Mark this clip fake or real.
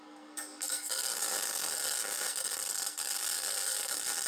fake